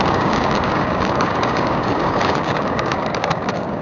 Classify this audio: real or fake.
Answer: fake